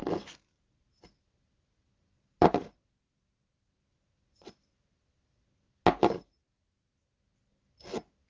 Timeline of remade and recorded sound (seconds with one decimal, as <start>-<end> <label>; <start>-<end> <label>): 0.0-8.3 recorded